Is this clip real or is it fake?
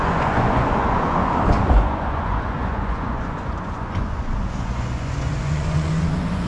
fake